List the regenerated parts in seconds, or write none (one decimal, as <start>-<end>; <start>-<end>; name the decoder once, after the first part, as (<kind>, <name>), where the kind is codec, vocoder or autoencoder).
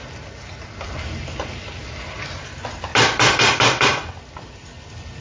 none